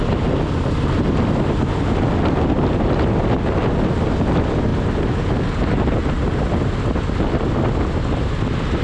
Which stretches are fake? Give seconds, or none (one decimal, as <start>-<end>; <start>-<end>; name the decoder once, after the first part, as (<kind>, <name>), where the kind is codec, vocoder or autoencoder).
none